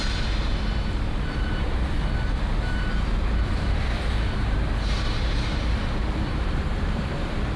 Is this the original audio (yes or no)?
no